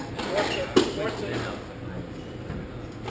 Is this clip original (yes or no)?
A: yes